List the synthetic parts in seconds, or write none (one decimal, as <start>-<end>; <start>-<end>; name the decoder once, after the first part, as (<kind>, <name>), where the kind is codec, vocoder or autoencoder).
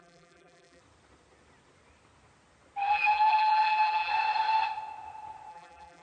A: 0.0-0.8 (vocoder, BigVGAN v2); 2.9-4.1; 5.5-6.0